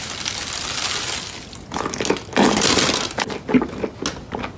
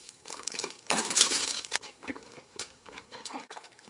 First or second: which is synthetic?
second